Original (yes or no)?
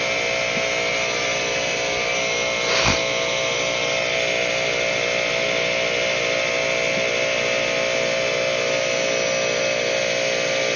yes